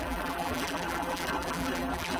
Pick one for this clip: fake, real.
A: fake